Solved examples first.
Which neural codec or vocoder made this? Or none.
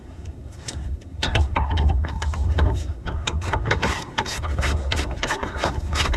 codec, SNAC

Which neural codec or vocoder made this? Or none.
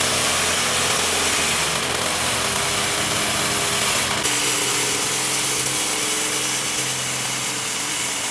none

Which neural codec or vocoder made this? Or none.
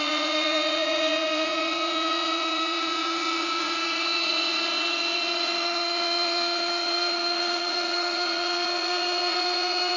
vocoder, Vocos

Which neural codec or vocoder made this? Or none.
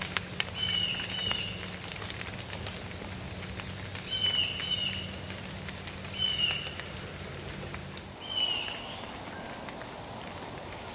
none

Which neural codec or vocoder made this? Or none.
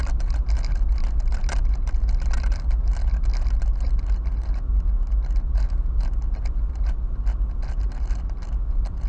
none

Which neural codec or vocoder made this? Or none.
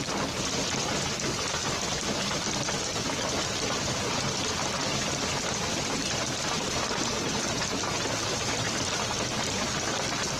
none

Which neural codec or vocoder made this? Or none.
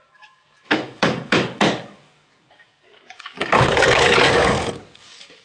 codec, DAC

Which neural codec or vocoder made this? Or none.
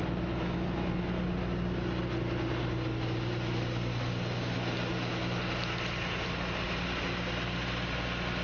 none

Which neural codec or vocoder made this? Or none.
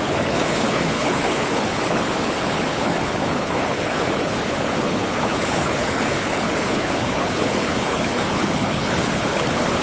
codec, HILCodec